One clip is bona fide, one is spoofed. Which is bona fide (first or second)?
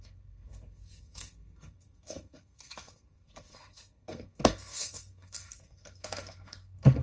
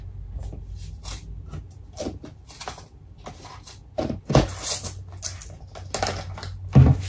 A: second